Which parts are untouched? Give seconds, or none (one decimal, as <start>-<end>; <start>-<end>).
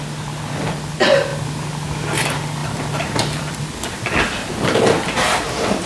0.0-2.6; 3.5-5.9